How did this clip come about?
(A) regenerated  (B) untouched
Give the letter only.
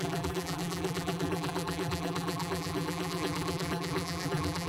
A